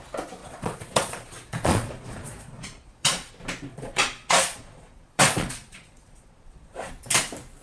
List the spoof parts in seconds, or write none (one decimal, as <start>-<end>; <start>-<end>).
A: 0.4-3.3; 3.7-6.9